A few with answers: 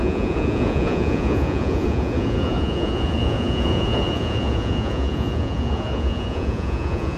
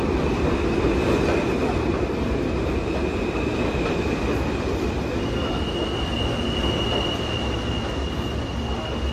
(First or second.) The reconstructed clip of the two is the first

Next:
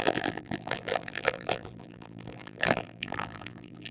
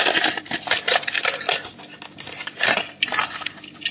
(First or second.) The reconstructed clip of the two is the first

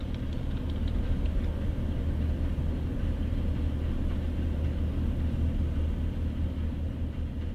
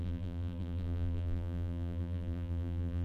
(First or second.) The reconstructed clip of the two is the second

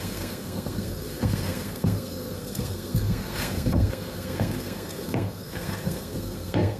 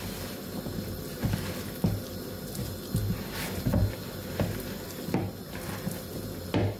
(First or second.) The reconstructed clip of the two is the first